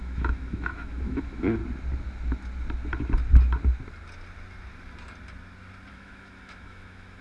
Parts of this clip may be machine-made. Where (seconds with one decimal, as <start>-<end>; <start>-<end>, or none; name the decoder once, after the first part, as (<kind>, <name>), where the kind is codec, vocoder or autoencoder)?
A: 0.0-1.6 (autoencoder, DAC-VAE); 5.9-7.2